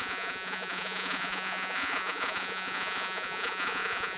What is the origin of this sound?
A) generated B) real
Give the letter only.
A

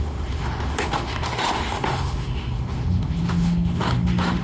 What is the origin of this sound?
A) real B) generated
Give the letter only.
B